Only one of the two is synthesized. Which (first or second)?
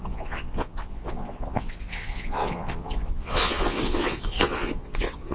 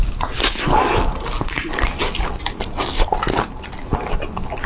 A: first